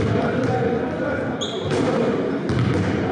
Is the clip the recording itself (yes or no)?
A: yes